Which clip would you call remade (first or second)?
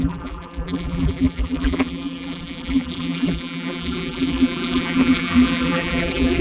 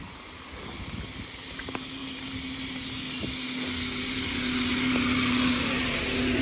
first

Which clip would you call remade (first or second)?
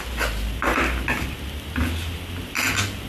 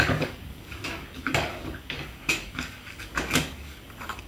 second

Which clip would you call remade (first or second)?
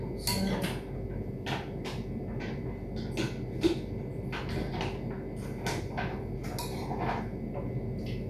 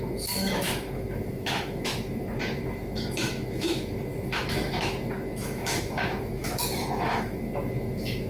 second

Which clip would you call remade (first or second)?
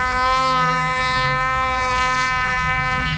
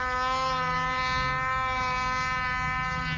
first